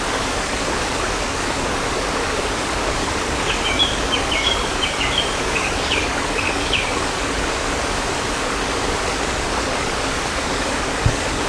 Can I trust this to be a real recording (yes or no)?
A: no